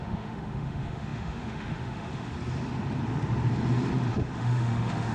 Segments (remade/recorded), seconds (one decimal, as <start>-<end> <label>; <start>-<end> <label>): 0.0-2.3 remade; 2.3-4.1 recorded; 4.1-5.1 remade